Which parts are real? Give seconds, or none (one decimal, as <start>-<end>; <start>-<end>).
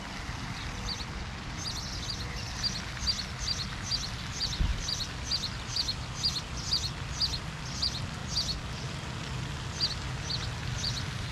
0.0-11.3